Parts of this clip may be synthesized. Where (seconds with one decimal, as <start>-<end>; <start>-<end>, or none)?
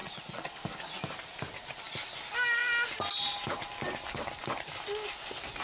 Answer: 0.0-0.6